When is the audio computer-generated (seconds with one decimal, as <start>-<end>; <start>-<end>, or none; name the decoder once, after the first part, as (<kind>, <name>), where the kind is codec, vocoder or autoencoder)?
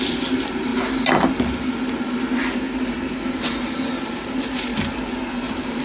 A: 0.0-0.7 (vocoder, BigVGAN v2); 3.3-4.7; 5.3-5.8